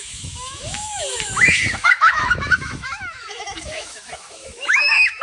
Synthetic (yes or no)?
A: yes